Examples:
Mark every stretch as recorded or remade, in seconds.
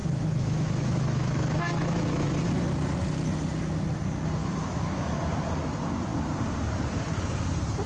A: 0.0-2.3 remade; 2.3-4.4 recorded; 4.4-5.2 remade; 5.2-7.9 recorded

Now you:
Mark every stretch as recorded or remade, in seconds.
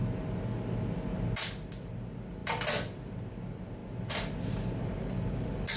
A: 0.0-1.4 recorded; 1.4-5.8 remade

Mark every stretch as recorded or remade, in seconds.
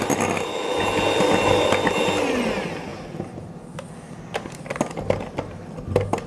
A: 0.0-6.3 recorded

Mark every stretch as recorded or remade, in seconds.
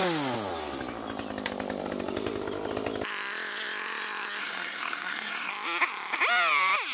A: 0.0-4.4 recorded; 4.4-5.5 remade; 5.5-6.9 recorded